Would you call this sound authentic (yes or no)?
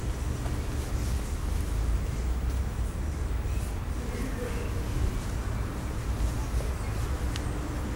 yes